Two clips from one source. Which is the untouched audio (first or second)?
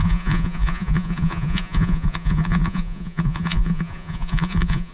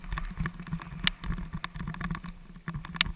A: second